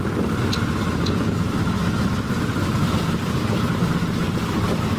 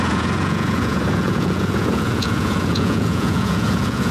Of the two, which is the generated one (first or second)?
second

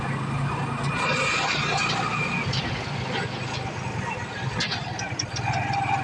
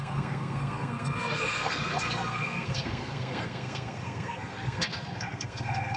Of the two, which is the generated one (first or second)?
second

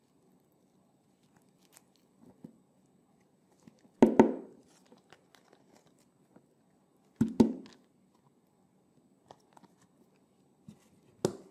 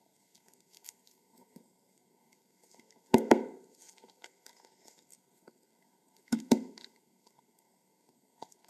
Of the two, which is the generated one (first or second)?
second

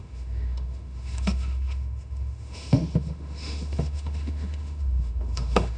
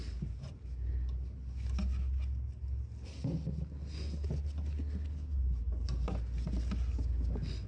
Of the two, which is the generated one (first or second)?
first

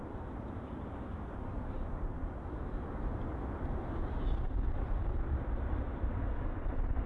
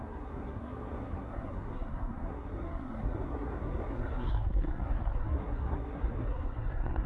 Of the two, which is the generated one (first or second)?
second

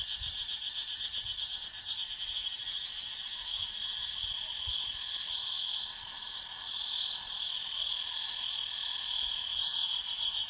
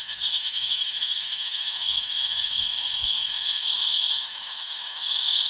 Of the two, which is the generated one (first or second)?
second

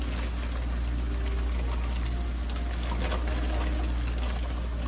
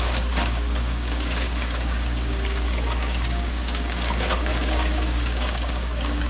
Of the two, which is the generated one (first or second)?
second